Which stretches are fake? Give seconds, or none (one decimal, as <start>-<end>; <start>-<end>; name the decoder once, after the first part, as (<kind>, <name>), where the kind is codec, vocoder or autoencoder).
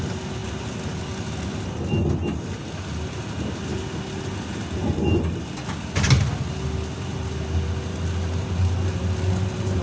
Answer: none